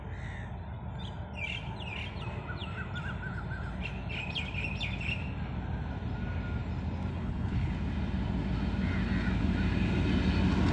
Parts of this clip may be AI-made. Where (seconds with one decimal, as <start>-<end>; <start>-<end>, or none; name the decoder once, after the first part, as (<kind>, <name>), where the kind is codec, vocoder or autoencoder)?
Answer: 7.1-7.7 (codec, HILCodec)